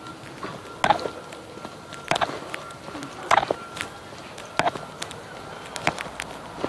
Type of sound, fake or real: real